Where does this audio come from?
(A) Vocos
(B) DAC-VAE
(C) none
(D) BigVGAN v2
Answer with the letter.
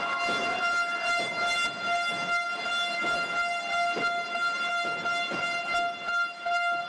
C